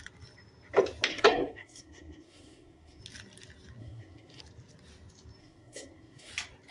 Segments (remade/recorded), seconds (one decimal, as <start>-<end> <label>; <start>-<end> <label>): 0.0-1.1 recorded; 1.1-3.0 remade; 3.0-3.8 recorded; 3.8-4.4 remade; 4.4-5.4 recorded; 5.4-6.3 remade; 6.3-6.7 recorded